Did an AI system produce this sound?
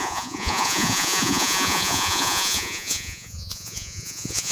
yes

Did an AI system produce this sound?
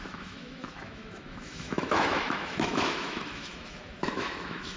yes